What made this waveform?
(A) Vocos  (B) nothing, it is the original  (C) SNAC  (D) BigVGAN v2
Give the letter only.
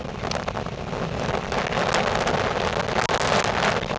B